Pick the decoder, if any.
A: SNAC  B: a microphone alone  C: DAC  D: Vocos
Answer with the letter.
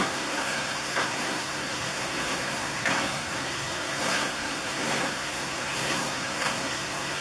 A